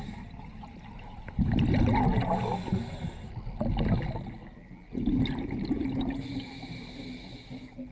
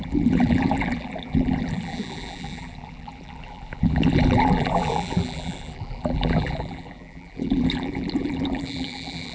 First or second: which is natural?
first